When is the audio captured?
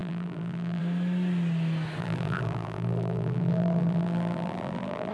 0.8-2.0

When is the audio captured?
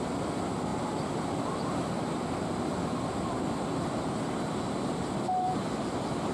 none